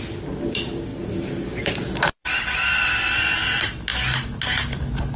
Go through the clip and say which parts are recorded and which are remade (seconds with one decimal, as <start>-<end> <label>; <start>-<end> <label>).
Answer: 0.0-0.9 recorded; 0.9-1.8 remade; 1.8-5.2 recorded

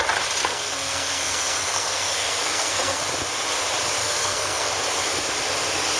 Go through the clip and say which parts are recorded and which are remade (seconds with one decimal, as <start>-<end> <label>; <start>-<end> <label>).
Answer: 0.0-0.4 recorded; 0.4-3.0 remade; 3.0-4.0 recorded; 4.0-4.7 remade; 4.7-6.0 recorded

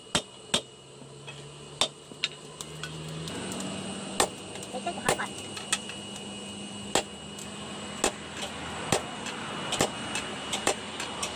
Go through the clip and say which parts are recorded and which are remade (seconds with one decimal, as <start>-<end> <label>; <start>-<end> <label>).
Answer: 0.0-10.3 recorded; 10.3-11.4 remade

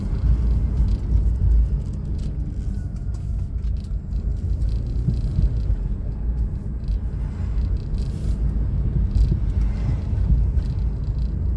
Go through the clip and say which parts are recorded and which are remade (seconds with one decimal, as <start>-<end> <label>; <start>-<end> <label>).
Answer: 0.0-11.6 recorded

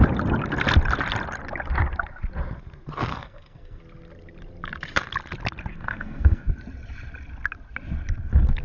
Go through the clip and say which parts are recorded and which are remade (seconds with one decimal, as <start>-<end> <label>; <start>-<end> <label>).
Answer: 0.0-3.1 recorded; 3.1-3.8 remade; 3.8-5.7 recorded; 5.7-6.5 remade; 6.5-8.6 recorded

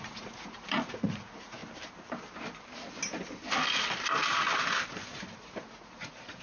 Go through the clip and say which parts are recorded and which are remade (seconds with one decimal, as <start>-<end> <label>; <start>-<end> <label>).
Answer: 0.0-1.6 remade; 1.6-5.4 recorded; 5.4-6.4 remade

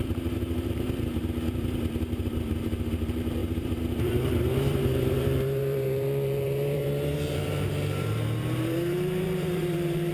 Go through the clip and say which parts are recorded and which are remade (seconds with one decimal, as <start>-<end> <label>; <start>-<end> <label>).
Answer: 0.0-10.1 remade

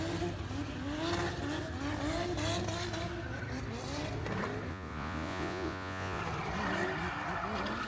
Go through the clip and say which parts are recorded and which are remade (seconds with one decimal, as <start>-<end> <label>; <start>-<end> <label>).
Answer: 0.0-4.7 recorded; 4.7-6.2 remade; 6.2-7.9 recorded